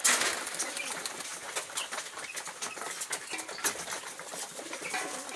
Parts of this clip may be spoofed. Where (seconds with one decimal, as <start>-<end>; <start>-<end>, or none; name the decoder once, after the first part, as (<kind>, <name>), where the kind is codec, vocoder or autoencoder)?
none